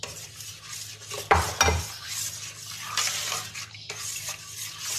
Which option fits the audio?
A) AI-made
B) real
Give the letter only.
B